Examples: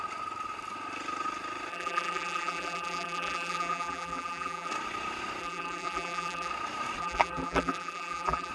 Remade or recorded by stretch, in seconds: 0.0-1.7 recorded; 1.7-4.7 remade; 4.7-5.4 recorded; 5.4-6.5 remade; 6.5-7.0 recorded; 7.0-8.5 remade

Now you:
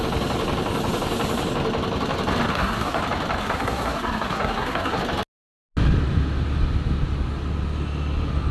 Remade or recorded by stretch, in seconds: 0.0-2.5 recorded; 2.5-3.0 remade; 3.0-3.4 recorded; 3.4-5.0 remade; 5.0-8.5 recorded

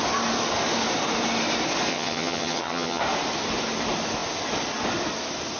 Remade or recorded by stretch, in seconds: 0.0-1.9 recorded; 1.9-3.0 remade; 3.0-5.6 recorded

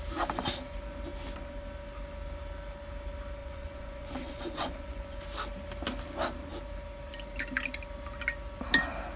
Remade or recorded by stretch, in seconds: 0.0-3.4 recorded; 3.4-5.2 remade; 5.2-9.2 recorded

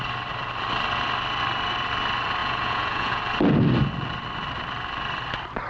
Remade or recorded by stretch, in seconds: 0.0-2.4 recorded; 2.4-3.2 remade; 3.2-5.7 recorded

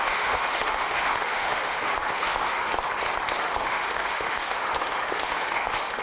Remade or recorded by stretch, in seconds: 0.0-2.7 remade; 2.7-3.4 recorded; 3.4-6.0 remade